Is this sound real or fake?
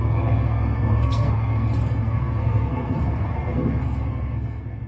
fake